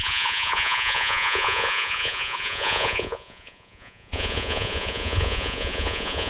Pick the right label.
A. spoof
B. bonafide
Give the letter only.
A